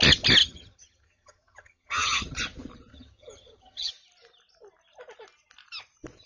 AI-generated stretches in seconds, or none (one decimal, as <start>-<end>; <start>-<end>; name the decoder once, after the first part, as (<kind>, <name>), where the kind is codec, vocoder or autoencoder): 0.4-2.4 (vocoder, HiFi-GAN); 2.9-3.9